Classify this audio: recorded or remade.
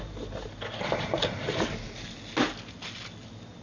recorded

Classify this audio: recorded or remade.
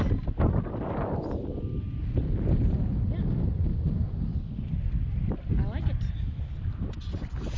recorded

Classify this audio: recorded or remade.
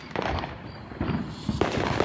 recorded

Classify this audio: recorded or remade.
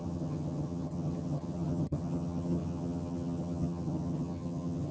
remade